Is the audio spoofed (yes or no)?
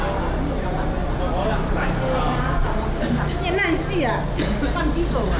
no